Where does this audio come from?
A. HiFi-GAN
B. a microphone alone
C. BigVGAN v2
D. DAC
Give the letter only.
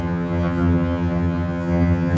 A